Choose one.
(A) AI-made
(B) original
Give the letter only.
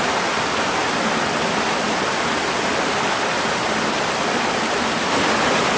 B